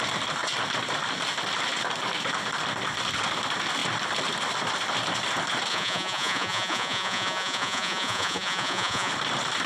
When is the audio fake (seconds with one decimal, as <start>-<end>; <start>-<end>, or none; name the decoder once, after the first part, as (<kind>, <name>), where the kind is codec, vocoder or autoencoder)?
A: 5.7-9.1 (vocoder, Vocos)